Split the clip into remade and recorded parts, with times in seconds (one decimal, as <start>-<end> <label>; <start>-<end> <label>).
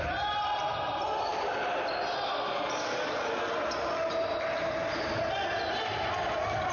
0.0-6.7 recorded